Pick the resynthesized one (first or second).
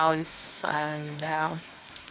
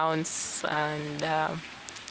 first